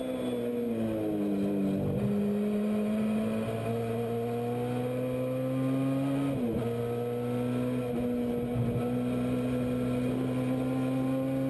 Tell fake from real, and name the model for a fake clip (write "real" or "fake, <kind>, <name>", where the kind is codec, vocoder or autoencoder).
real